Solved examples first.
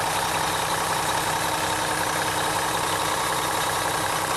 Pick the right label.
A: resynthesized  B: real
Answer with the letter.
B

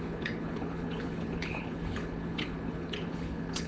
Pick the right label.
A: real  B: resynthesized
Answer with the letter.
B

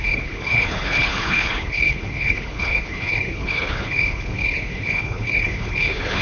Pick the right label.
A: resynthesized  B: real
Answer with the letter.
A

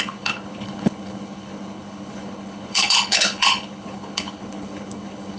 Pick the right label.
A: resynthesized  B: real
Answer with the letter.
A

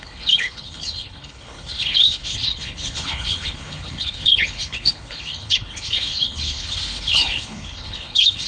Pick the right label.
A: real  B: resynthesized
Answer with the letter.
B